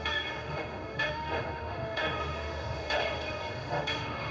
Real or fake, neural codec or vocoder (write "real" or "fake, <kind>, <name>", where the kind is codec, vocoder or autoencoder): fake, autoencoder, DAC-VAE